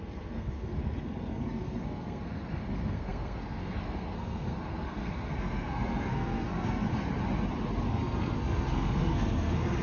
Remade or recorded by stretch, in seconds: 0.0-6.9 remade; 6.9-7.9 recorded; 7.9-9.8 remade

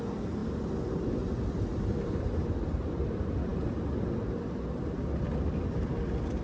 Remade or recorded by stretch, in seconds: 0.0-6.4 recorded

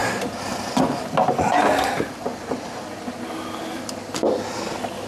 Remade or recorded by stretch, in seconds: 0.0-5.1 recorded

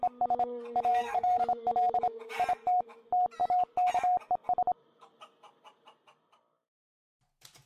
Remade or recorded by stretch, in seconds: 0.0-0.9 recorded; 0.9-1.4 remade; 1.4-7.7 recorded

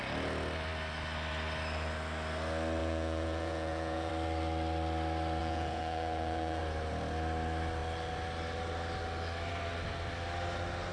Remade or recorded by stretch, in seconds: 0.0-2.8 recorded; 2.8-4.1 remade; 4.1-5.4 recorded; 5.4-6.6 remade; 6.6-10.9 recorded

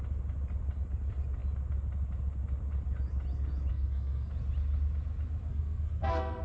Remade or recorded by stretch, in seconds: 0.0-3.7 recorded; 3.7-4.3 remade; 4.3-5.5 recorded; 5.5-6.4 remade

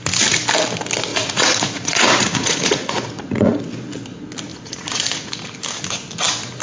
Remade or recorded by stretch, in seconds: 0.0-1.1 recorded; 1.1-3.6 remade; 3.6-4.5 recorded; 4.5-5.4 remade; 5.4-6.6 recorded